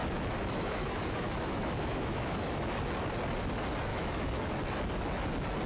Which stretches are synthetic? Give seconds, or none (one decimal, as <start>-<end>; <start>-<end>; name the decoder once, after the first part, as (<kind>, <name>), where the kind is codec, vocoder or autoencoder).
0.0-2.9 (autoencoder, DAC-VAE); 3.9-4.6